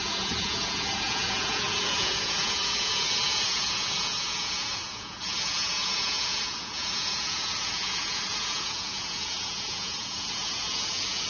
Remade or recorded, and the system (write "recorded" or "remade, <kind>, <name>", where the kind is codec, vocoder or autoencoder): remade, vocoder, Vocos